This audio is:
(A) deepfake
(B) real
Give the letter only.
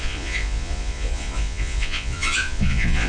A